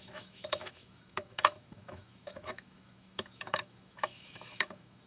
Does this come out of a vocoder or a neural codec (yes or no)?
yes